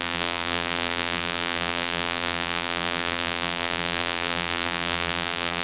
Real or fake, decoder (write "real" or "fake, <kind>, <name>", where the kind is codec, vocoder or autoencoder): fake, vocoder, BigVGAN v2